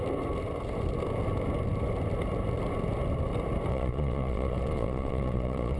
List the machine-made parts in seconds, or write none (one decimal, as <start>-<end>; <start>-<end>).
3.7-5.8

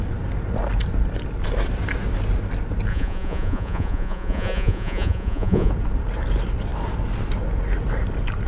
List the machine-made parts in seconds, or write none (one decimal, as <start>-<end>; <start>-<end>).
2.9-5.7

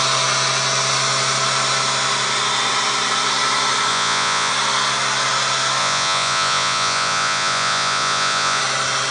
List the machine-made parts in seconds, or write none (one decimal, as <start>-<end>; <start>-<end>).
3.9-4.5; 5.8-8.6

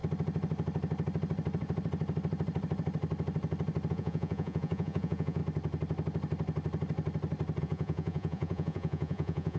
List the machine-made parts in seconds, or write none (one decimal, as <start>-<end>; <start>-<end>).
3.9-5.4; 7.6-9.6